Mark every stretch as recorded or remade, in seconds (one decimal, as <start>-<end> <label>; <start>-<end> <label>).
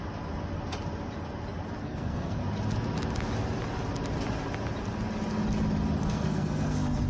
0.0-1.8 recorded; 1.8-2.4 remade; 2.4-6.0 recorded; 6.0-7.1 remade